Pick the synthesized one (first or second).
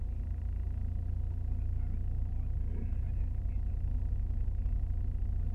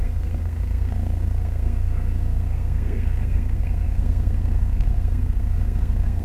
second